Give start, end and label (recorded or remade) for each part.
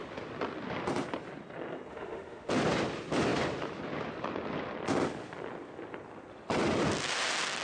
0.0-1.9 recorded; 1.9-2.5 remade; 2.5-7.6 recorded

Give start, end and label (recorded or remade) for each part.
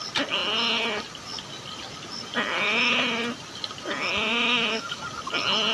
0.0-4.3 recorded; 4.3-5.0 remade; 5.0-5.7 recorded